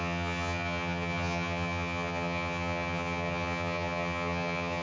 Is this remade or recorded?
remade